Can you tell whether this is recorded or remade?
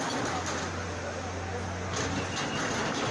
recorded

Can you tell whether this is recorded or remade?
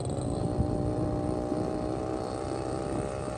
recorded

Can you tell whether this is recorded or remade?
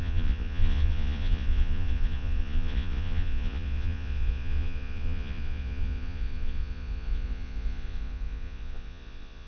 remade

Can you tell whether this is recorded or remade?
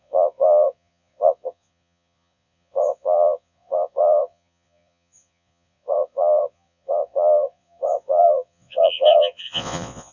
remade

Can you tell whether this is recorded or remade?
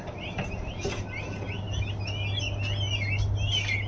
recorded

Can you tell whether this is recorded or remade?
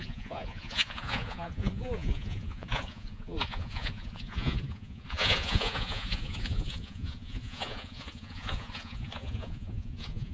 remade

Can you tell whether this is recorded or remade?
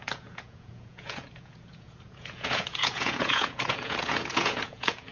remade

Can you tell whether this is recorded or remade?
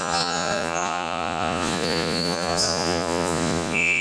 remade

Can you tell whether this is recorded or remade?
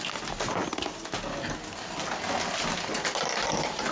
recorded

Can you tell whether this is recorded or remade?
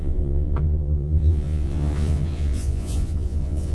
remade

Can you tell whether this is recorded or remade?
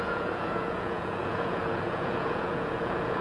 remade